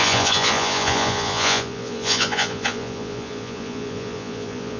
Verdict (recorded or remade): remade